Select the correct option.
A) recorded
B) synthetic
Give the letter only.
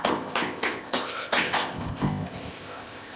B